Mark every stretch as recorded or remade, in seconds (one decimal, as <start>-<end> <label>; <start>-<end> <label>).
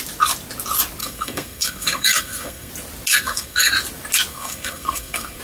0.0-1.0 recorded; 1.0-2.7 remade; 2.7-3.1 recorded; 3.1-3.7 remade; 3.7-4.3 recorded; 4.3-5.4 remade